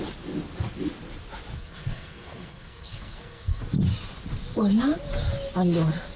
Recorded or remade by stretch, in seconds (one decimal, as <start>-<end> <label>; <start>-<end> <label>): 0.0-1.5 recorded; 1.5-3.6 remade; 3.6-6.2 recorded